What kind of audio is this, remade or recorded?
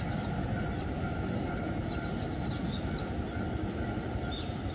recorded